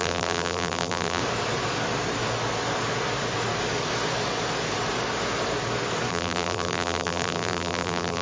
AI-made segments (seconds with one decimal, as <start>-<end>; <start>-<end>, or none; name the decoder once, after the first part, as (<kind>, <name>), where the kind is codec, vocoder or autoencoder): 0.0-1.2 (vocoder, BigVGAN v2); 6.1-8.2